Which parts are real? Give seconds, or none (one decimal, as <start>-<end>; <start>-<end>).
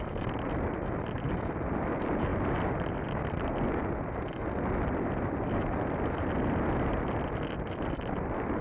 0.0-8.6